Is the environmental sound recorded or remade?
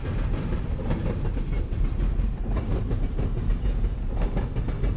remade